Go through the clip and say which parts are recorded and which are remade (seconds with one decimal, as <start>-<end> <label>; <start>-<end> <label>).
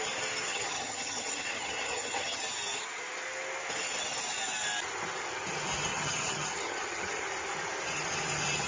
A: 0.0-0.5 recorded; 0.5-2.4 remade; 2.4-5.9 recorded; 5.9-7.2 remade; 7.2-8.7 recorded